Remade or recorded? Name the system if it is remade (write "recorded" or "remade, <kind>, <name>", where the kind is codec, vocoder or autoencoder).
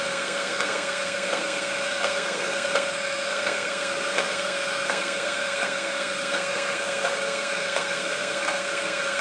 remade, codec, SNAC